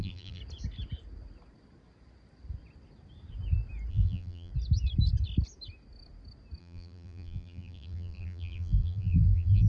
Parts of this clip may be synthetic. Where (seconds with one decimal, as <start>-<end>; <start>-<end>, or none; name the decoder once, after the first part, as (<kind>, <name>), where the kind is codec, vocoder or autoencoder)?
0.0-0.4 (vocoder, BigVGAN v2); 3.9-4.5; 6.6-9.7

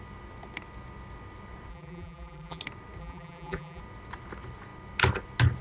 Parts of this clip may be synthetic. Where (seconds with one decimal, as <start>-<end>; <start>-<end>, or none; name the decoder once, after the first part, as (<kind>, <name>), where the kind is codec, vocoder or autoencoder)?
1.7-2.6 (vocoder, BigVGAN v2); 3.0-3.8

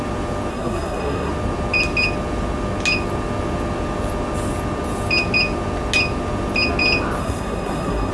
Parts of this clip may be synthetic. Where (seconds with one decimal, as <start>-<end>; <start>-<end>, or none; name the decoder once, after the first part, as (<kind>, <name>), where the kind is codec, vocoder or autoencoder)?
0.5-1.3 (codec, SNAC); 7.2-8.1

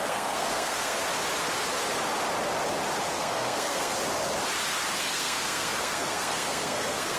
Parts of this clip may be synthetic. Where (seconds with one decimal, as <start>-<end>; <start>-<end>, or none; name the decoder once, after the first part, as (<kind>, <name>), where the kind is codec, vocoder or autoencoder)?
0.0-1.0 (codec, SNAC); 3.1-3.9; 5.0-7.2

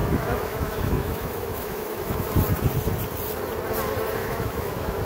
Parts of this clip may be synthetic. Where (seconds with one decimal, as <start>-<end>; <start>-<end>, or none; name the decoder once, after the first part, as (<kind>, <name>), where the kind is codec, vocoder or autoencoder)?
0.0-2.3 (autoencoder, DAC-VAE); 4.2-5.0

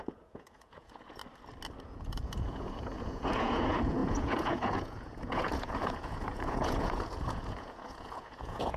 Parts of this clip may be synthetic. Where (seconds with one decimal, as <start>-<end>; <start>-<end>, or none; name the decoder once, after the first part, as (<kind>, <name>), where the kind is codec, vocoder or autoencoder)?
0.0-1.2 (vocoder, Vocos); 1.8-8.8

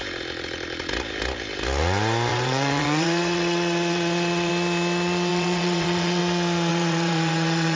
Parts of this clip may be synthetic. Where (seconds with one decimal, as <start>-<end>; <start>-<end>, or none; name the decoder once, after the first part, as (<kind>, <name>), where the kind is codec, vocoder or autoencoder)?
2.3-4.5 (vocoder, WaveNeXt); 5.3-6.2; 6.7-7.8